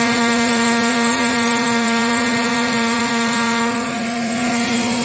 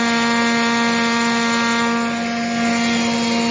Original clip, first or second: second